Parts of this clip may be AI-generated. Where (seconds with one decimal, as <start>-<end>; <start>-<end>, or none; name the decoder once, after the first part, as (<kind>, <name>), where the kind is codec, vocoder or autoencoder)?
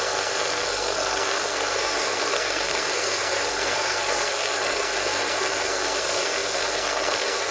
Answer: 0.0-7.5 (codec, SNAC)